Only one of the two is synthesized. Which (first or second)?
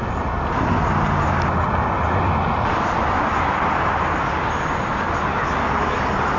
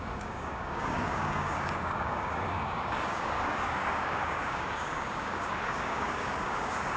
second